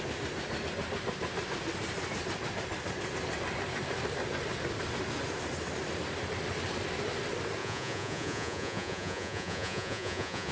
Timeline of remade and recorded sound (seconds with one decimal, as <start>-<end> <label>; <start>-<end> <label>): 0.0-7.6 recorded; 7.6-10.5 remade